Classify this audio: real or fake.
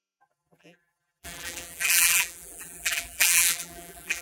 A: fake